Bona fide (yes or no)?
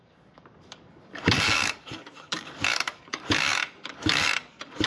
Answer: no